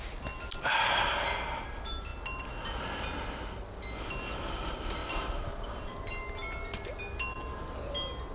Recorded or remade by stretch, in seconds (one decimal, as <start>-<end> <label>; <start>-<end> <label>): 0.0-5.0 recorded; 5.0-6.2 remade; 6.2-8.3 recorded